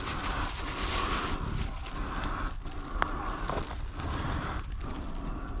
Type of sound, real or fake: real